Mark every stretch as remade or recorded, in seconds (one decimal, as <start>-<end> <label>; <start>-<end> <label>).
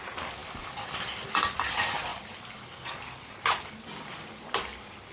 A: 0.0-0.4 recorded; 0.4-1.3 remade; 1.3-2.1 recorded; 2.1-3.3 remade; 3.3-5.1 recorded